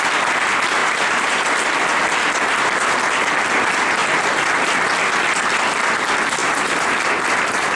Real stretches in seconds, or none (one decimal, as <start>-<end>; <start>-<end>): 0.0-0.8; 1.5-6.4